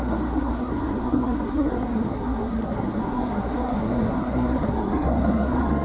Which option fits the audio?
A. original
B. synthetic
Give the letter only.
B